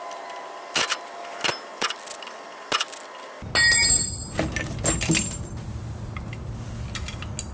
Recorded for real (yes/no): yes